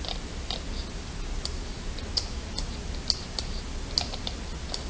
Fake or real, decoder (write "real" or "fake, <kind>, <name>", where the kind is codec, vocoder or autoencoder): real